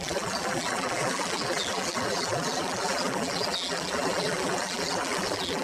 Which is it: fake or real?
fake